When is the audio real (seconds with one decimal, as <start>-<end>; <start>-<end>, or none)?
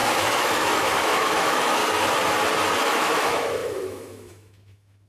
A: 1.8-2.8